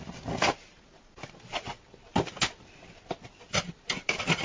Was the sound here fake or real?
real